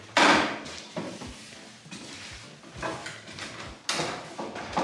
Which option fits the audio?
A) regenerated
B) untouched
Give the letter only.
B